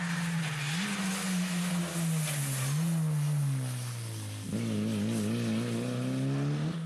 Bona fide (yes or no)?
yes